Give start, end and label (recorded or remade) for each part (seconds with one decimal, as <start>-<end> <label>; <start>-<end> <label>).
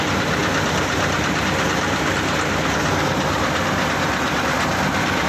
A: 0.0-5.3 recorded